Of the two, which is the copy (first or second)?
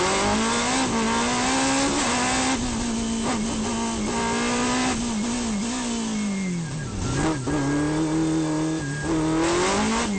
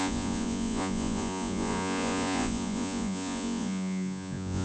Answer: second